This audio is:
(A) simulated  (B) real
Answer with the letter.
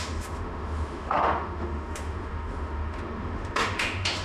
A